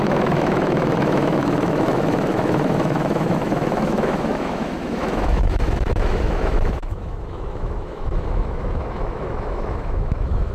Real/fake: fake